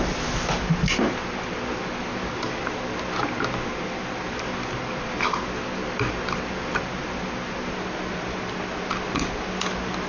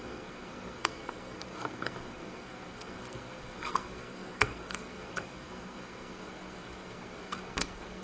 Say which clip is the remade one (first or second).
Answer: second